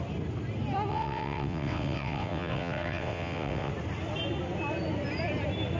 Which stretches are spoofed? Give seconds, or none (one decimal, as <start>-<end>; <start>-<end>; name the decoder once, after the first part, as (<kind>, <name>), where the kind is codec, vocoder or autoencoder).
0.9-3.7 (vocoder, WaveNeXt)

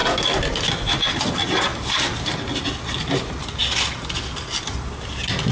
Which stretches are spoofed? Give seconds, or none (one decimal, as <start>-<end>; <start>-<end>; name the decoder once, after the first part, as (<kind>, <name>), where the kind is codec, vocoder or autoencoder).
none

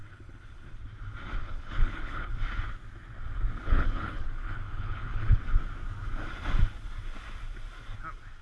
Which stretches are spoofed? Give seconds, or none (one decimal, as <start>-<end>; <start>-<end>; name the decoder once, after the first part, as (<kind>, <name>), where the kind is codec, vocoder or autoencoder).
0.0-0.8 (codec, HILCodec); 1.4-2.3; 3.6-5.4